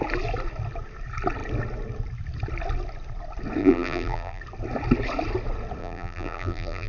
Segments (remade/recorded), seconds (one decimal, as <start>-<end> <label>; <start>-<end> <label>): 0.0-3.6 recorded; 3.6-4.4 remade; 4.4-5.8 recorded; 5.8-6.9 remade